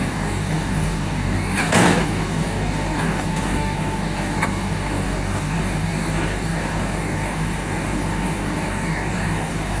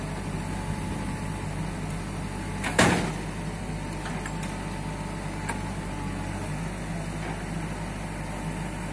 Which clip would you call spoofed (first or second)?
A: first